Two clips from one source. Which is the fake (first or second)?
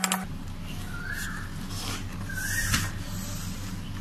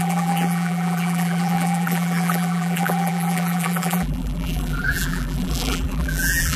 second